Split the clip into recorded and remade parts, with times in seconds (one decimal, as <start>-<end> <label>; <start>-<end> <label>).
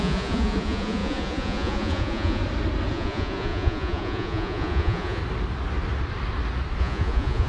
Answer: 0.0-2.4 remade; 2.4-2.9 recorded; 2.9-5.2 remade; 5.2-6.8 recorded; 6.8-7.5 remade